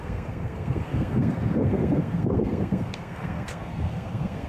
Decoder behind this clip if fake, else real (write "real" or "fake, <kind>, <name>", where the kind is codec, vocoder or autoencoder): fake, codec, SNAC